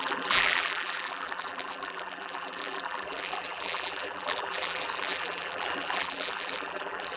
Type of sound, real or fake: fake